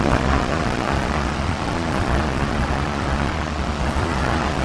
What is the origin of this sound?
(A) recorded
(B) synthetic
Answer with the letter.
B